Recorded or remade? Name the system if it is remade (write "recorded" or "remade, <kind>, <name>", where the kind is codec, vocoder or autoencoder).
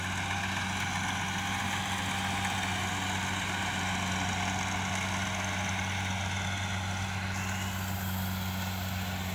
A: recorded